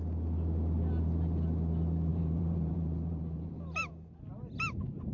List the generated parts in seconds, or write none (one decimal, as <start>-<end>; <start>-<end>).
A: 2.1-3.9